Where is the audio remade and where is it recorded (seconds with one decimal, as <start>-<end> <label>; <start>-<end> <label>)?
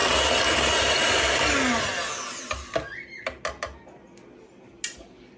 0.0-5.4 recorded